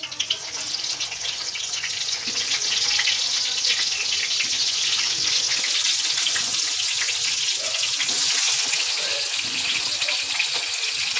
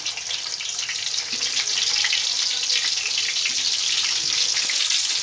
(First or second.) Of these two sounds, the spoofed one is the first